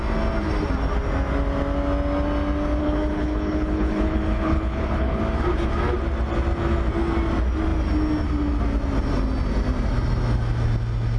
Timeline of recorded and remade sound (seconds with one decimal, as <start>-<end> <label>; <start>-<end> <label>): 0.0-2.8 recorded; 2.8-5.2 remade; 5.2-11.2 recorded